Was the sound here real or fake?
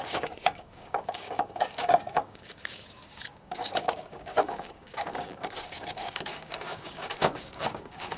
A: fake